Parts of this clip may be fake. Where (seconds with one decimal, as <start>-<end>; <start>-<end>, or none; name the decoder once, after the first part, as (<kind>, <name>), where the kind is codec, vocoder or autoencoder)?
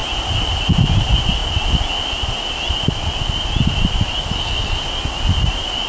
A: none